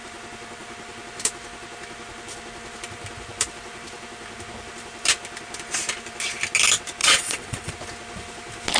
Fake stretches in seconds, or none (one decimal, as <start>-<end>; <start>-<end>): 7.0-7.7